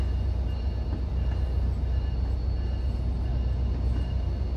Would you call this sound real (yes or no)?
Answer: yes